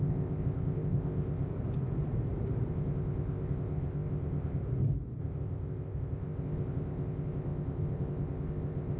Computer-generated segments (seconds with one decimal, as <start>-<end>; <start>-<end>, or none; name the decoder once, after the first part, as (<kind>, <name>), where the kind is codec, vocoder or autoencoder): 0.0-1.5 (codec, ZipCodec); 2.7-4.6; 5.2-9.0